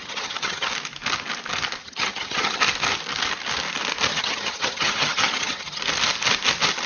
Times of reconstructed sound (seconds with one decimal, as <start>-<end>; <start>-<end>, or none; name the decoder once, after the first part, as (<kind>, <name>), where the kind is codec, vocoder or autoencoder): 0.0-0.7 (vocoder, HiFi-GAN); 1.8-2.6; 4.1-5.8